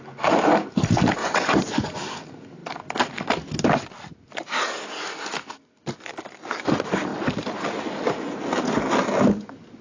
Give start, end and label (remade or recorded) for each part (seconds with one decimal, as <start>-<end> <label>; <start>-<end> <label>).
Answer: 0.0-1.2 recorded; 1.2-2.0 remade; 2.0-9.8 recorded